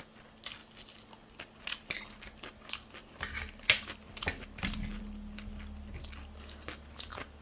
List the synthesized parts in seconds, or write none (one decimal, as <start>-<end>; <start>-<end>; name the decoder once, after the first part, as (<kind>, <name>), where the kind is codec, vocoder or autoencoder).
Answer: none